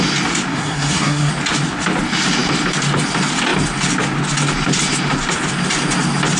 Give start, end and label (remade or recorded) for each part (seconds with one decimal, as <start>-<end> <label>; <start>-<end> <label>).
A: 0.0-0.5 recorded; 0.5-1.3 remade; 1.3-6.4 recorded